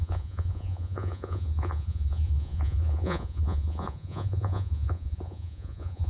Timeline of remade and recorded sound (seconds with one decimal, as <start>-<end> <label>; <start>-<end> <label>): 0.0-6.1 remade